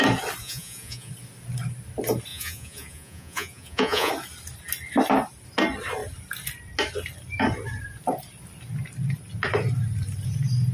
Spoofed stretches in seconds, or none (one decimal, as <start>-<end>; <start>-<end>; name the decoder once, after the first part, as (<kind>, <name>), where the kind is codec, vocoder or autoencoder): 0.4-1.1 (vocoder, Vocos); 2.3-4.1